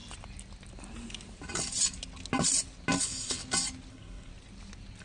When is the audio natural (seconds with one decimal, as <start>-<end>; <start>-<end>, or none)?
0.0-3.0; 3.4-3.9; 4.3-5.0